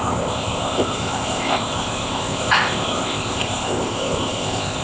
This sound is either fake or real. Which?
fake